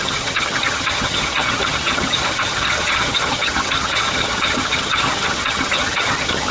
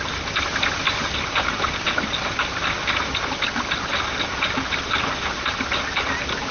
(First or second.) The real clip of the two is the second